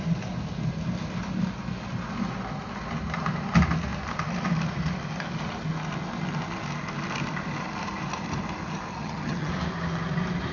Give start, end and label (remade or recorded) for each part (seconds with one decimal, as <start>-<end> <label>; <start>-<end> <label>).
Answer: 0.0-8.9 recorded; 8.9-9.5 remade; 9.5-10.5 recorded